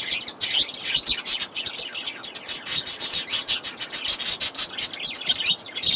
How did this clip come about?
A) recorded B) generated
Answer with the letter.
A